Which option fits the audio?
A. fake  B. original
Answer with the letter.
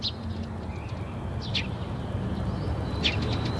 B